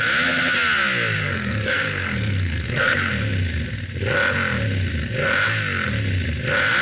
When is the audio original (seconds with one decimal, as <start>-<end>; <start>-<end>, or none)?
0.0-1.2; 3.1-6.8